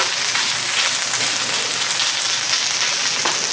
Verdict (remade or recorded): recorded